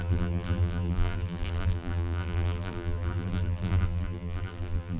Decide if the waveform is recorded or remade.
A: remade